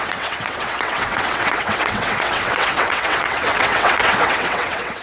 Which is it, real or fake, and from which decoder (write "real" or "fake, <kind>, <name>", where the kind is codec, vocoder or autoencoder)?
fake, vocoder, WaveNeXt